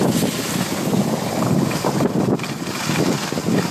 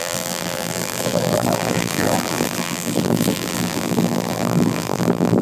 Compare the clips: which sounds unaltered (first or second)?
first